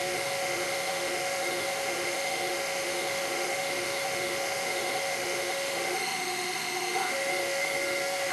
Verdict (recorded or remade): remade